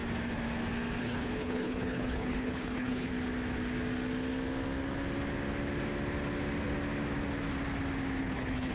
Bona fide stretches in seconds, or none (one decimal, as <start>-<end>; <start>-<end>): 0.0-1.0; 3.1-8.2